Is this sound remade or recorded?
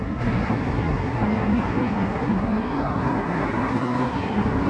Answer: remade